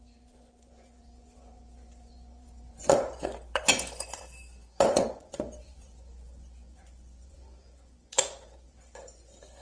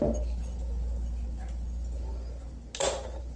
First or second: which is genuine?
second